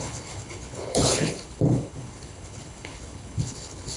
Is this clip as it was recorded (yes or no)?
no